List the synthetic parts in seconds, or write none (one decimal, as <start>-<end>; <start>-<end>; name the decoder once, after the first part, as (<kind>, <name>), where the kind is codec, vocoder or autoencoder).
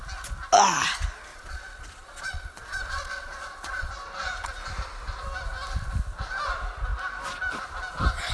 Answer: 1.3-3.9 (vocoder, Vocos)